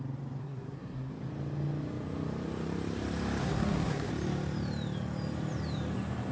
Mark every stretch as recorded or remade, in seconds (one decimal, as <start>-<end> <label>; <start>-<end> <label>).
0.0-0.4 recorded; 0.4-1.1 remade; 1.1-3.4 recorded; 3.4-4.1 remade; 4.1-6.3 recorded